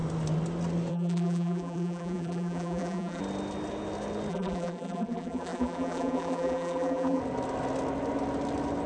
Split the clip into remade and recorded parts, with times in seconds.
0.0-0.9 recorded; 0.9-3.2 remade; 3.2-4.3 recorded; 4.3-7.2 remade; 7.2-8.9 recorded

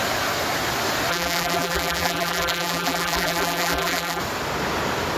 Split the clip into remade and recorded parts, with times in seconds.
0.0-1.1 recorded; 1.1-4.2 remade; 4.2-5.2 recorded

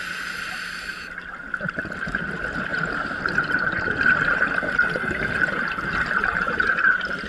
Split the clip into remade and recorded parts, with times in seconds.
0.0-2.7 recorded; 2.7-4.5 remade; 4.5-7.3 recorded

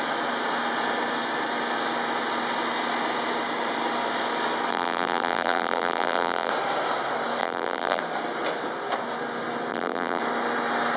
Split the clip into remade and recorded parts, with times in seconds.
0.0-4.7 recorded; 4.7-6.5 remade; 6.5-7.4 recorded; 7.4-8.0 remade; 8.0-9.7 recorded; 9.7-10.2 remade; 10.2-11.0 recorded

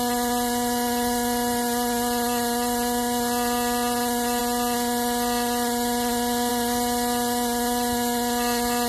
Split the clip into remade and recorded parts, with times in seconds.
0.0-8.9 recorded

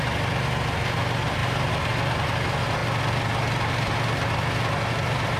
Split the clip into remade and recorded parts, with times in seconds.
0.0-1.4 recorded; 1.4-1.9 remade; 1.9-5.4 recorded